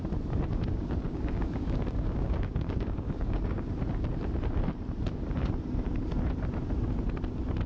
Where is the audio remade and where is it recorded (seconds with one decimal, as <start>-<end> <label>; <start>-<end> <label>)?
0.0-0.7 recorded; 0.7-3.7 remade; 3.7-7.7 recorded